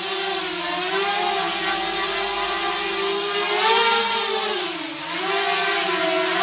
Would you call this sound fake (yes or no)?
no